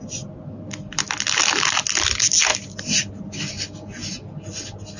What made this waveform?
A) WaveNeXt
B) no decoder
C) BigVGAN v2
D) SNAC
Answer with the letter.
B